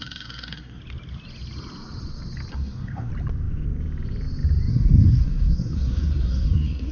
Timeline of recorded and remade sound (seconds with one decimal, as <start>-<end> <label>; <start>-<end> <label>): 0.0-0.8 remade; 0.8-2.5 recorded; 2.5-3.1 remade; 3.1-4.7 recorded; 4.7-6.9 remade